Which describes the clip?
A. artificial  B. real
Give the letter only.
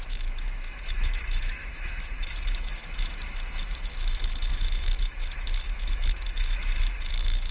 A